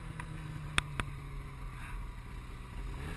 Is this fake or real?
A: real